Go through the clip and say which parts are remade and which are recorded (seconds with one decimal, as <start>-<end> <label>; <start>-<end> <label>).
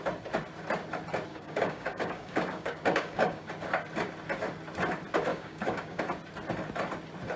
0.0-1.3 recorded; 1.3-3.5 remade; 3.5-5.3 recorded; 5.3-6.0 remade; 6.0-7.4 recorded